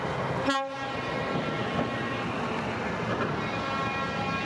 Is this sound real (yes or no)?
yes